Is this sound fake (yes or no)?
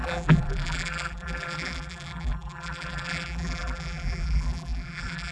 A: yes